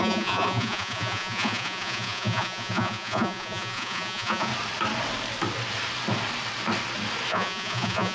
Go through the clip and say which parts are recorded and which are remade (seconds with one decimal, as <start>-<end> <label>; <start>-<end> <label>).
0.0-4.5 remade; 4.5-7.3 recorded; 7.3-8.1 remade